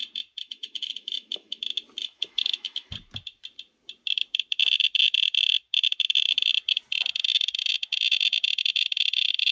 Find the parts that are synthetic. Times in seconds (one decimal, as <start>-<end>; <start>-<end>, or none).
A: 0.4-1.6; 2.0-2.9